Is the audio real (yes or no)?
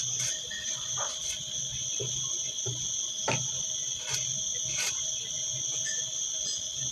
yes